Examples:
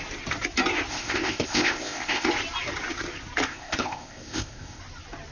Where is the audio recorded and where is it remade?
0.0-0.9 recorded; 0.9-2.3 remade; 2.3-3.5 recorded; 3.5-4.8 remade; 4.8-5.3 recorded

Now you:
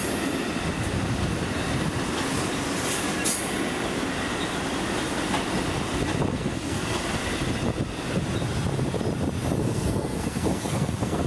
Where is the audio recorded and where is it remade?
0.0-6.3 recorded; 6.3-7.0 remade; 7.0-9.6 recorded; 9.6-11.3 remade